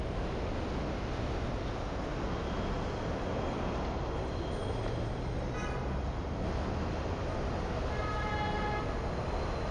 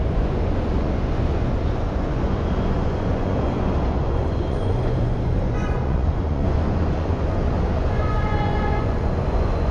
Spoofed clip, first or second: second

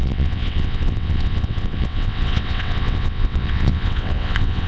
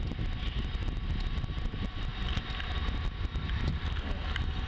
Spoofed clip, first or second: first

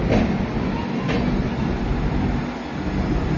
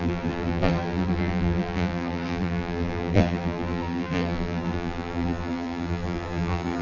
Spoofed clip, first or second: second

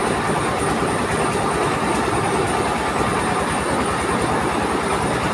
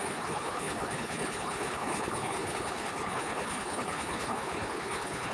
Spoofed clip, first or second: second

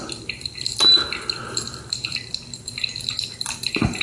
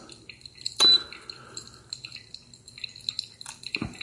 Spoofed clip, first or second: first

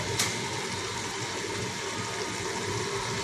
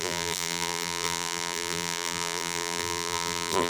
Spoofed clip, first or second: second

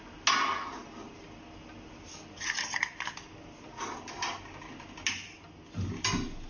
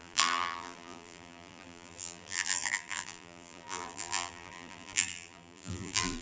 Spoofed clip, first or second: second